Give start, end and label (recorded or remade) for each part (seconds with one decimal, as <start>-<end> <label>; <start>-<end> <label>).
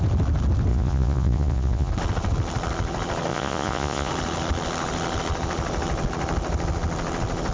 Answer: 0.0-0.7 recorded; 0.7-1.9 remade; 1.9-3.3 recorded; 3.3-4.1 remade; 4.1-7.5 recorded